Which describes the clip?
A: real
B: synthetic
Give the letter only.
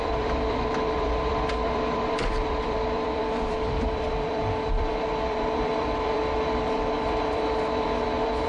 B